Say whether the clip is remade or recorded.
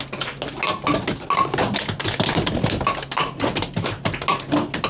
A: recorded